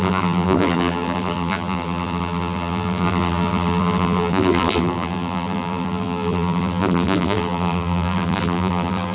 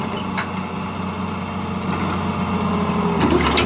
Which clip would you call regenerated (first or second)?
first